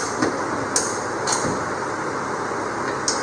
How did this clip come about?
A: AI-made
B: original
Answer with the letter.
B